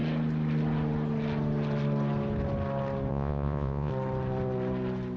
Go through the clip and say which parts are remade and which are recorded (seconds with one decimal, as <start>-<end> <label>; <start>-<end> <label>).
0.0-3.1 recorded; 3.1-3.9 remade; 3.9-5.2 recorded